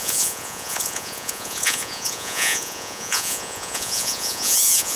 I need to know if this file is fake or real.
fake